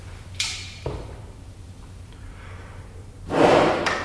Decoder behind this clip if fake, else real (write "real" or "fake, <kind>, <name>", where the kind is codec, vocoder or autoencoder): fake, vocoder, BigVGAN v2